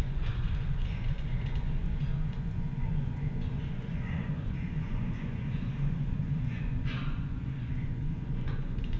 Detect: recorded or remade remade